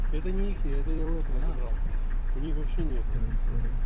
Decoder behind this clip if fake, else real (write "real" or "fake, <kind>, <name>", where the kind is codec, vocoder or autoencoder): fake, vocoder, BigVGAN v2